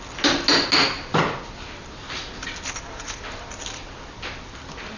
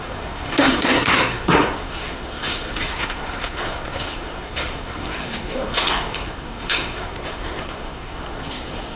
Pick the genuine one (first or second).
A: first